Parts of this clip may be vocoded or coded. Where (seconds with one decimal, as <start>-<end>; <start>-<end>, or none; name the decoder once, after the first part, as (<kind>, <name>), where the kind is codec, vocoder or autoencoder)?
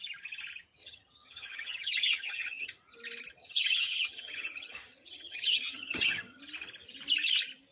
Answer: 0.8-2.8 (vocoder, HiFi-GAN); 3.4-6.4